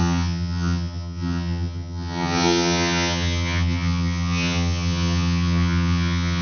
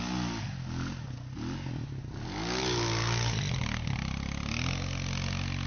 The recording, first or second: second